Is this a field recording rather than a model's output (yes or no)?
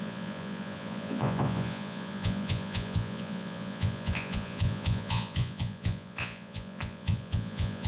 no